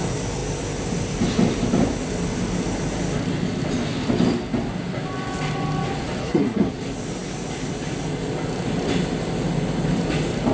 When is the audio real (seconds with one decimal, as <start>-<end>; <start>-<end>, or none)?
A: 0.0-6.2; 6.7-10.5